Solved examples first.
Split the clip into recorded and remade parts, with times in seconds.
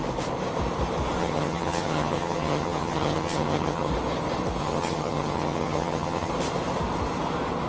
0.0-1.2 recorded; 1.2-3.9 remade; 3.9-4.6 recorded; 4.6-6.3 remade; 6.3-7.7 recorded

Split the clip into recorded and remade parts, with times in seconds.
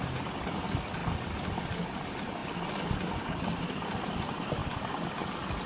0.0-5.7 recorded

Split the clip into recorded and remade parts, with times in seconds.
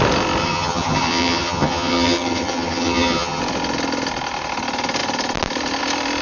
0.0-0.4 recorded; 0.4-3.4 remade; 3.4-6.2 recorded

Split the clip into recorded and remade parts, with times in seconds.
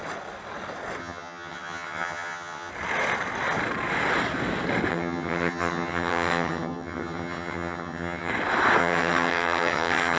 0.0-1.0 recorded; 1.0-2.7 remade; 2.7-4.9 recorded; 4.9-8.3 remade; 8.3-8.8 recorded; 8.8-10.2 remade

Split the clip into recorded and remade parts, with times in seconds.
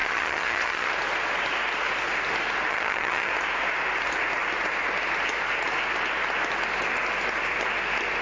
0.0-0.9 remade; 0.9-2.7 recorded; 2.7-3.3 remade; 3.3-8.2 recorded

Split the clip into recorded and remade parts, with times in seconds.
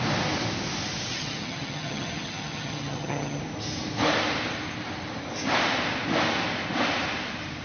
0.0-1.1 recorded; 1.1-3.4 remade; 3.4-7.6 recorded